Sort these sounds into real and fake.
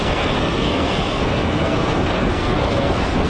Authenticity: fake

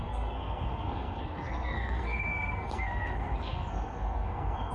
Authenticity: fake